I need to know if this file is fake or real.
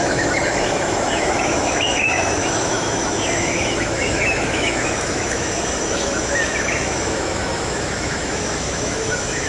fake